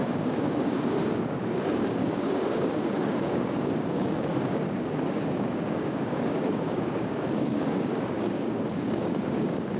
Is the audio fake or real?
fake